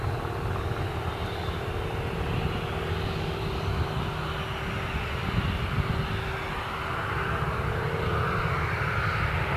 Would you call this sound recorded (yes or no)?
yes